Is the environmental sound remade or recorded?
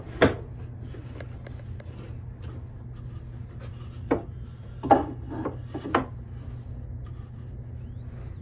recorded